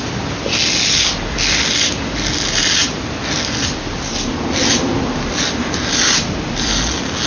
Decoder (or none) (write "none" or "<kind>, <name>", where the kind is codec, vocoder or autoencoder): none